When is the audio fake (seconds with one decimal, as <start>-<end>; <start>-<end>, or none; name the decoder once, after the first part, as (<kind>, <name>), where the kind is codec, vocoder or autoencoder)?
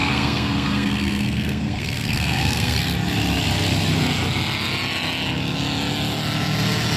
0.0-2.8 (codec, SNAC)